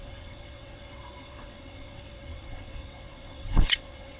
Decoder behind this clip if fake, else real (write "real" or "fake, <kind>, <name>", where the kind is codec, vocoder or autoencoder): fake, vocoder, WaveNeXt